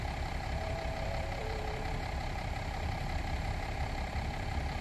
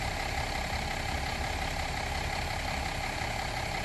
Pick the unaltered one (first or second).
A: second